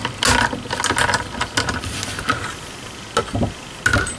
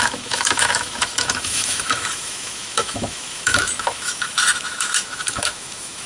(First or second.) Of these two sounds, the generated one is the second